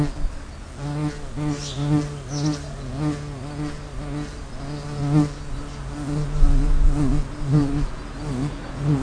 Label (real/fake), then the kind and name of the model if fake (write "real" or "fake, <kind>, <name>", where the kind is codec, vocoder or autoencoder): real